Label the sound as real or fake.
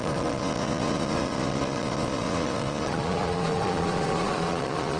fake